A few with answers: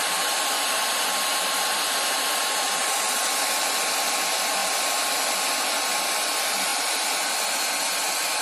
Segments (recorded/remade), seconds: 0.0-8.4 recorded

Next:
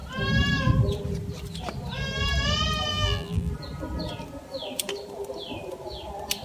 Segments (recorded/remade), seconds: 0.0-2.9 recorded; 2.9-3.5 remade; 3.5-6.4 recorded

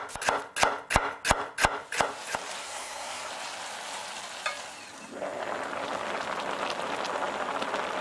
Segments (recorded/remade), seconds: 0.0-2.6 recorded; 2.6-3.3 remade; 3.3-8.0 recorded

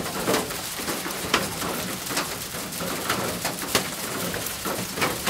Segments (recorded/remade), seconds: 0.0-1.5 remade; 1.5-3.8 recorded; 3.8-5.3 remade